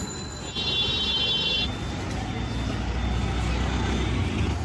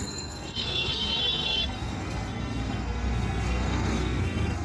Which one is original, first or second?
first